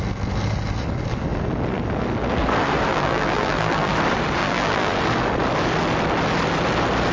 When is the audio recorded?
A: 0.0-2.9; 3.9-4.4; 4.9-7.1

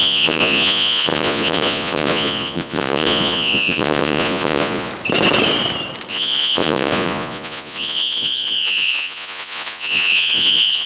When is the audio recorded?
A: 4.9-6.1

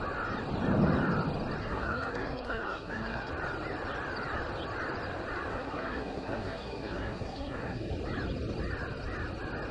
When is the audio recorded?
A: 0.0-1.6; 3.3-5.5; 7.9-9.7

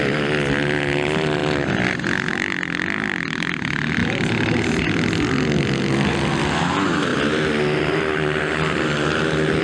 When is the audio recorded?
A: 0.0-4.0; 4.9-9.6

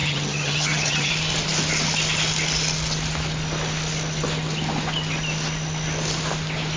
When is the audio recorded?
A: 1.1-6.8